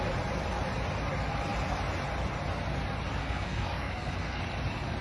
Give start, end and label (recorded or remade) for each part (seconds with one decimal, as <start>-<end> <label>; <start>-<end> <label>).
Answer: 0.0-3.2 recorded; 3.2-4.4 remade; 4.4-5.0 recorded